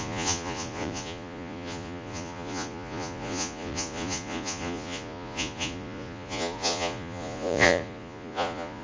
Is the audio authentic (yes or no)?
no